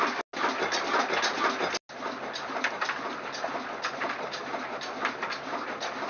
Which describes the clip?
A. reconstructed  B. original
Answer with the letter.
B